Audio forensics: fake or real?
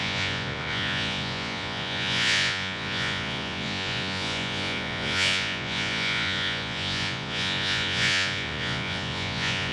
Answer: fake